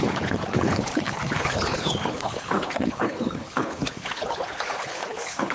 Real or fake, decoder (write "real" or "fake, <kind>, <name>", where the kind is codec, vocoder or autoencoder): fake, codec, HILCodec